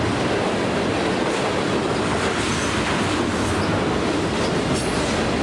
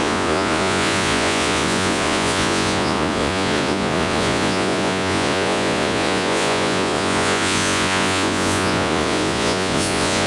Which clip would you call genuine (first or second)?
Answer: first